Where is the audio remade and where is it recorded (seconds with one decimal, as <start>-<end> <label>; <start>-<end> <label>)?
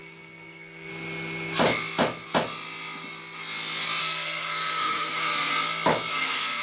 0.0-0.9 remade; 0.9-4.0 recorded; 4.0-5.5 remade; 5.5-6.1 recorded; 6.1-6.6 remade